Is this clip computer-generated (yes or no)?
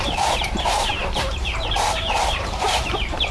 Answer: yes